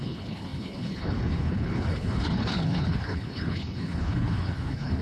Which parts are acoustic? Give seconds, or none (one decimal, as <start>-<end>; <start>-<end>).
none